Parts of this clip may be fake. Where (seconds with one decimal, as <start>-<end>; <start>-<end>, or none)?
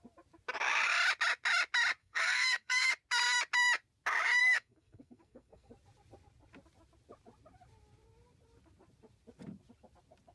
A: 2.0-2.9; 4.4-5.7